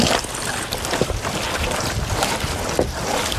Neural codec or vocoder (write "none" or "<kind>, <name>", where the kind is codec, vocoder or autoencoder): none